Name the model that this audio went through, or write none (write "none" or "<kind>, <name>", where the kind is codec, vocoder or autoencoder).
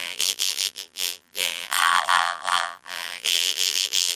vocoder, BigVGAN v2